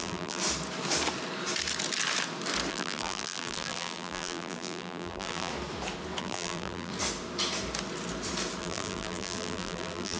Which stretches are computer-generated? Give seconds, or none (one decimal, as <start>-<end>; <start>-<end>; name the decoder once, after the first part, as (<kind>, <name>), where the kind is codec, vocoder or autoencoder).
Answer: 0.0-0.4 (vocoder, BigVGAN v2); 2.7-5.5; 6.2-6.9; 8.6-10.2